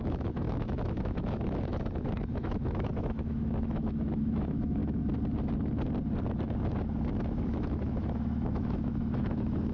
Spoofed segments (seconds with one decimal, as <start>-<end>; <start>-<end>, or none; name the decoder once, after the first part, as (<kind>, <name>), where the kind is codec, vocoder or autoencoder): 0.0-4.8 (autoencoder, DAC-VAE); 7.2-9.7